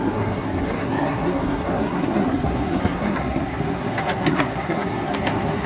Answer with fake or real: fake